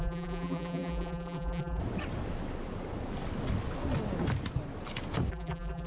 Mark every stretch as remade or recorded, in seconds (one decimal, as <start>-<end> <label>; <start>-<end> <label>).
0.0-1.8 remade; 1.8-5.3 recorded; 5.3-5.9 remade